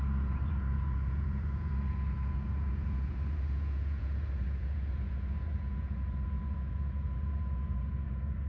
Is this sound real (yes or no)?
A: no